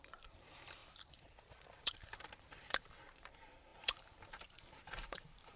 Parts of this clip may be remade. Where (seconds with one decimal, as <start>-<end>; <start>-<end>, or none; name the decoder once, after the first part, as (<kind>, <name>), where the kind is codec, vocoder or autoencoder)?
0.0-5.6 (vocoder, BigVGAN v2)

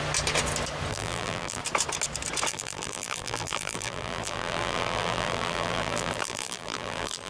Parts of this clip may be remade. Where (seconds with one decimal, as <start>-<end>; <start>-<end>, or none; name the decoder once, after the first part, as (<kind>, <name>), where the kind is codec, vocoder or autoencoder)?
0.9-1.6 (vocoder, BigVGAN v2); 2.5-7.3

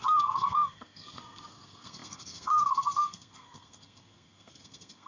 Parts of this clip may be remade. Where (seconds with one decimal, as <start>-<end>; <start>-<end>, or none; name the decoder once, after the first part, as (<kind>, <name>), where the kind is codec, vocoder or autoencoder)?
0.0-5.1 (codec, SNAC)

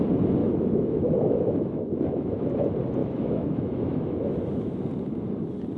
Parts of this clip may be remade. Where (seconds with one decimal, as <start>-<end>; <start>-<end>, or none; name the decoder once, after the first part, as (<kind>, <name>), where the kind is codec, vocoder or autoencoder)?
0.4-2.4 (autoencoder, DAC-VAE); 3.0-4.7

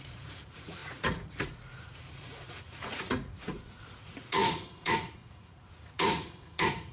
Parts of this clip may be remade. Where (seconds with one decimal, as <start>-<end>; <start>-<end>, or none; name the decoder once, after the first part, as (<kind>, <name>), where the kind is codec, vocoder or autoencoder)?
0.0-6.9 (vocoder, Vocos)

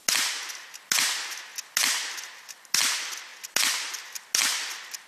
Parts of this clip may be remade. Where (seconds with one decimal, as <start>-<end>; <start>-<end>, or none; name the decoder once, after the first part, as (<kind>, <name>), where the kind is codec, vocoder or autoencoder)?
none

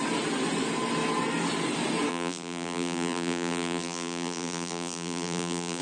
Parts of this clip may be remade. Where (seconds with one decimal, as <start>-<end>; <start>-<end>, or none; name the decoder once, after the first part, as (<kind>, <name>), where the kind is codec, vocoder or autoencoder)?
2.1-5.8 (vocoder, BigVGAN v2)

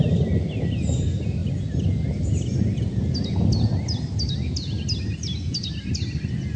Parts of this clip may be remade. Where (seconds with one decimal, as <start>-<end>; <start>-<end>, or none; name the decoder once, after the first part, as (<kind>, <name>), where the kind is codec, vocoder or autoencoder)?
none